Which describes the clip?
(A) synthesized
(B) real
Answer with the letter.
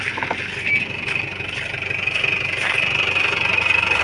B